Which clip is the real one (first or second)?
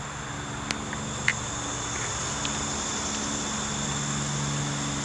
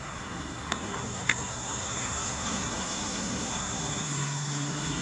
first